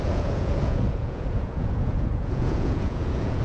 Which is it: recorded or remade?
remade